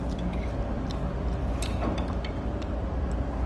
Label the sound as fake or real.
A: real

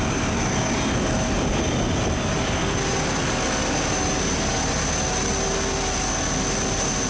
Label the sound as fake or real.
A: real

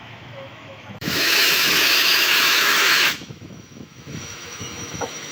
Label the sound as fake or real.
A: fake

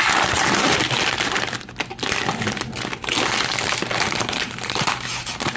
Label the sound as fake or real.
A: fake